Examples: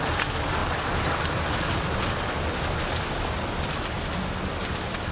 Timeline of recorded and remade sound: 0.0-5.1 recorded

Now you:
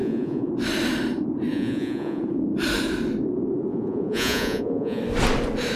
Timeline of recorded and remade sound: 0.0-0.5 remade; 0.5-1.5 recorded; 1.5-2.2 remade; 2.2-3.7 recorded; 3.7-5.0 remade; 5.0-5.8 recorded

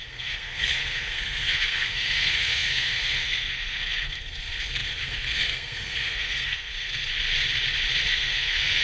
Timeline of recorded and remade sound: 0.0-7.0 remade; 7.0-8.1 recorded; 8.1-8.8 remade

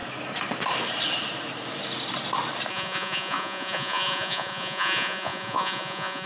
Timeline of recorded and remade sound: 0.0-2.7 recorded; 2.7-6.3 remade

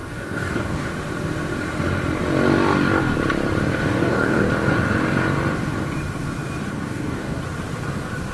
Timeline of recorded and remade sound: 0.0-0.9 remade; 0.9-3.7 recorded; 3.7-4.5 remade; 4.5-6.7 recorded; 6.7-7.4 remade; 7.4-8.3 recorded

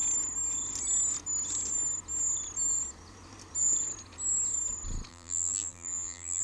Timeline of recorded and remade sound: 0.0-5.1 recorded; 5.1-6.4 remade